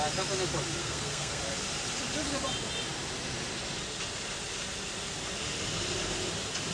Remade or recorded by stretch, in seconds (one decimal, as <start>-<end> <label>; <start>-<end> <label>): 0.0-0.8 recorded; 0.8-1.4 remade; 1.4-6.7 recorded